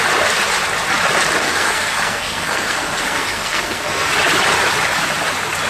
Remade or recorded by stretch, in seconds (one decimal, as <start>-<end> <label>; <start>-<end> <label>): 0.0-1.4 recorded; 1.4-4.1 remade; 4.1-5.7 recorded